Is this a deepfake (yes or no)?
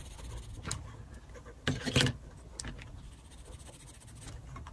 no